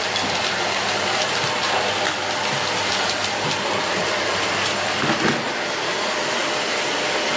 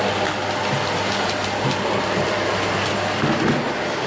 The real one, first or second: second